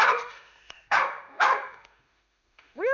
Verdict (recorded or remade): remade